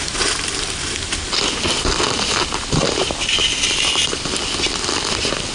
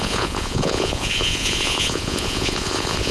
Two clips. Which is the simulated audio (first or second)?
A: second